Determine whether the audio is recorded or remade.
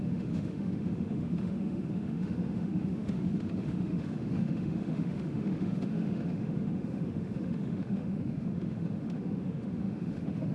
remade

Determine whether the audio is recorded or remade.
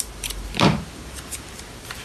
remade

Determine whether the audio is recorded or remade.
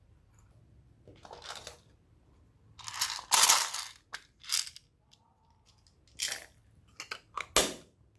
recorded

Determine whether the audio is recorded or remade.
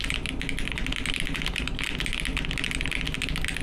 recorded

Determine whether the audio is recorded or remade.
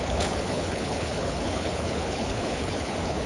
remade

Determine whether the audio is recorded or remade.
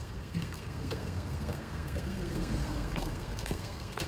remade